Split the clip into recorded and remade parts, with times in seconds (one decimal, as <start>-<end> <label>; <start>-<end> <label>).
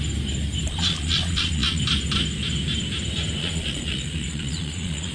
0.0-0.7 recorded; 0.7-1.8 remade; 1.8-3.4 recorded; 3.4-5.1 remade